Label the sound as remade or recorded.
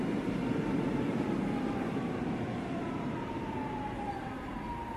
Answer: remade